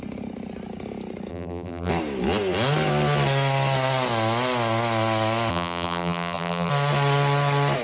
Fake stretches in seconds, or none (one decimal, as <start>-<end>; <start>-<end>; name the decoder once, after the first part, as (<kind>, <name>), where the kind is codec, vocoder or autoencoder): 1.3-1.9 (vocoder, BigVGAN v2); 5.5-6.7